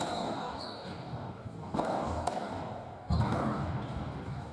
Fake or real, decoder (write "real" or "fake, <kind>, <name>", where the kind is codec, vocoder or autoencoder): fake, codec, DAC